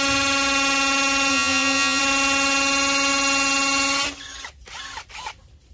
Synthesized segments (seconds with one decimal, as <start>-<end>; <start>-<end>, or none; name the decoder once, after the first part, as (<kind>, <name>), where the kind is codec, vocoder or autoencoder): 1.3-2.0 (vocoder, HiFi-GAN)